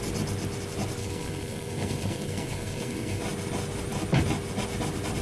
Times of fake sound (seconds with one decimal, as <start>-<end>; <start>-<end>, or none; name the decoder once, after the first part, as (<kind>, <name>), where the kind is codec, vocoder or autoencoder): 1.0-3.2 (codec, SNAC)